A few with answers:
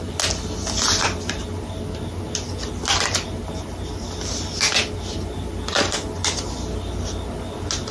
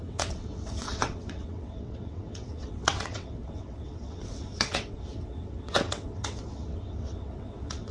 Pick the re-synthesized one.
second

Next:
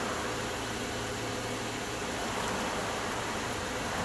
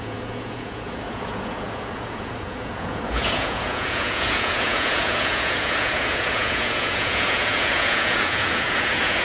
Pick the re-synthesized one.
second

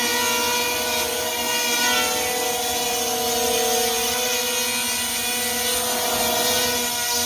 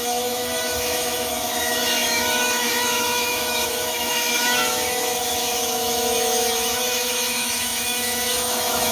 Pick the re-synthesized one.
second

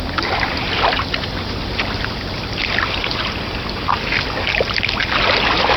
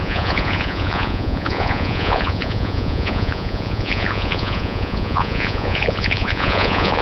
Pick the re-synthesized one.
second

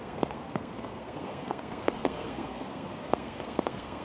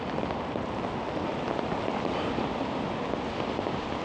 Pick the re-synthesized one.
first